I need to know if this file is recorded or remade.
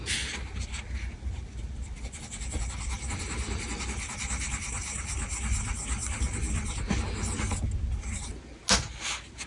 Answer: recorded